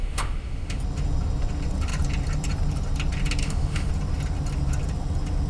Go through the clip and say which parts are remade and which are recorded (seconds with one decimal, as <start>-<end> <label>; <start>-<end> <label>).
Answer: 0.0-0.8 remade; 0.8-3.4 recorded; 3.4-3.9 remade; 3.9-5.5 recorded